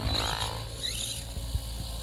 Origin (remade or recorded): recorded